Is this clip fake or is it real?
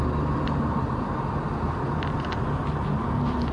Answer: real